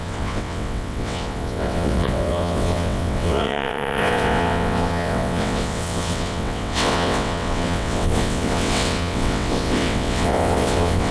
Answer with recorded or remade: remade